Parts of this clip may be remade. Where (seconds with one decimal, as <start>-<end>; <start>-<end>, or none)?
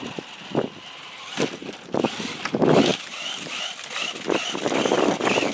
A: 1.6-2.4; 2.9-5.5